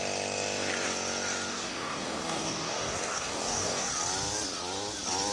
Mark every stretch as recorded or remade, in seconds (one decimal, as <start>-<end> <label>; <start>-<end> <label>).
0.0-1.5 recorded; 1.5-3.9 remade; 3.9-5.3 recorded